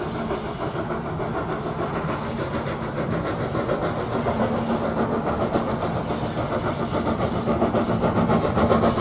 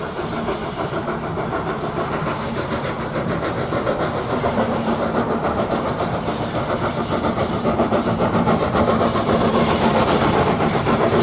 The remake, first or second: second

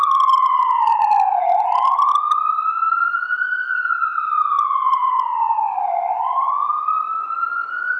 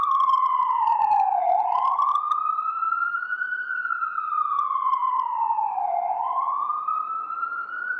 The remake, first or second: second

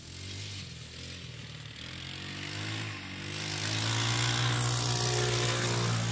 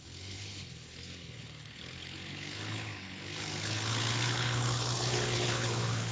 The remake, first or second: second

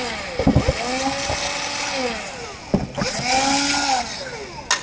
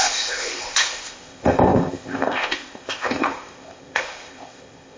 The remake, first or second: second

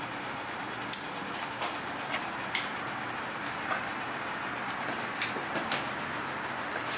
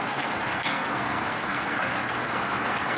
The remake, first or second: second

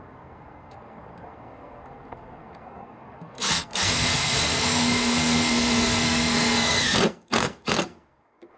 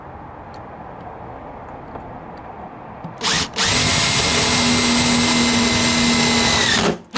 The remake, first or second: first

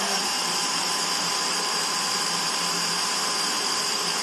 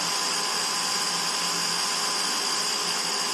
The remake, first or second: first